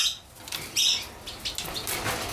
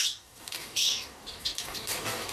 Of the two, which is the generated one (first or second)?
second